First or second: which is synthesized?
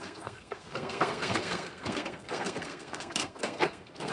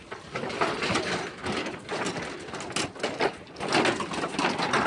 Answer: first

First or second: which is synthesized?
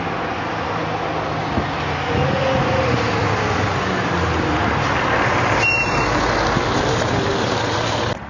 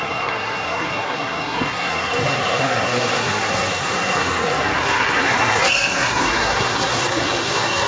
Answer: second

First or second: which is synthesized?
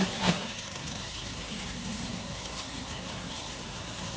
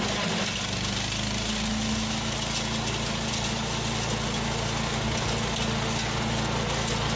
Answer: first